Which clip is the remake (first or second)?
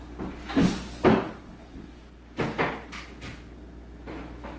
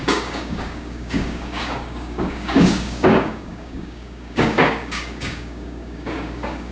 second